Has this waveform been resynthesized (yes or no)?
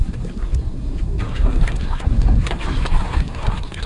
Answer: yes